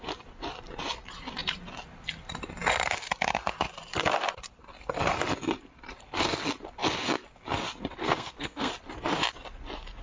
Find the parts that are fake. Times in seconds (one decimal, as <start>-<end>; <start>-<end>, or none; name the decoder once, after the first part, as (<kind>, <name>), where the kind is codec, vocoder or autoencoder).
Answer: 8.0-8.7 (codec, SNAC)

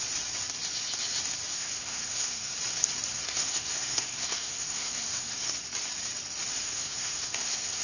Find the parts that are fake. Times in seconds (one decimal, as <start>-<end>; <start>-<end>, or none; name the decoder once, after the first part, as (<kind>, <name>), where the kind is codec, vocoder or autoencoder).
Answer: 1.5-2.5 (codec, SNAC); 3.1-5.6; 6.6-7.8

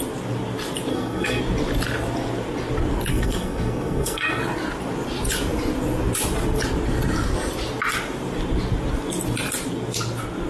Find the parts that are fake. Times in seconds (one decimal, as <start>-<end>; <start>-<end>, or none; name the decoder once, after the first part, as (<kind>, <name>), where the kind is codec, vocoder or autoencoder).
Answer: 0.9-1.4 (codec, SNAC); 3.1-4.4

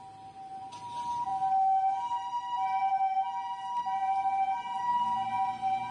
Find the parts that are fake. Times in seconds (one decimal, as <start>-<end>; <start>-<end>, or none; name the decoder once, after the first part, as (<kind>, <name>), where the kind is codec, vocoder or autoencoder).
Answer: none